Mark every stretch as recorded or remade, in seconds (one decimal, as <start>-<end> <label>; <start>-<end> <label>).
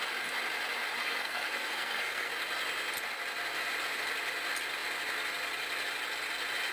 0.0-1.0 recorded; 1.0-2.3 remade; 2.3-6.7 recorded